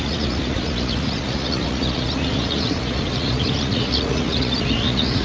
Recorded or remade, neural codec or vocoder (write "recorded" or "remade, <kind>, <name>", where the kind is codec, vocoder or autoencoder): remade, vocoder, Vocos